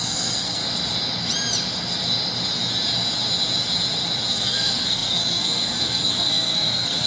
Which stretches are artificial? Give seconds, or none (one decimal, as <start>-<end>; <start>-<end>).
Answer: 0.0-0.6; 4.3-7.1